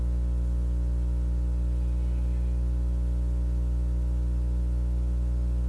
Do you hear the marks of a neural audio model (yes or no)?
no